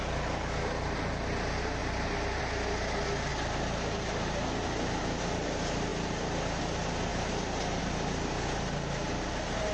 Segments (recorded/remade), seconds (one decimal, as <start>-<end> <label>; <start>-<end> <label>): 0.0-9.7 recorded